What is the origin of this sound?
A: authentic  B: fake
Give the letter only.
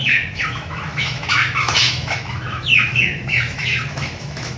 B